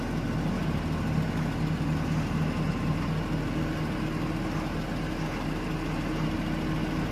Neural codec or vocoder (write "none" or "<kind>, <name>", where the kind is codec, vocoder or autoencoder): none